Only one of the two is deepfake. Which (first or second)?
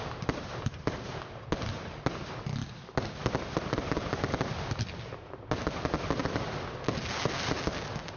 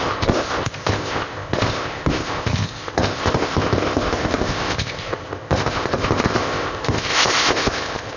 second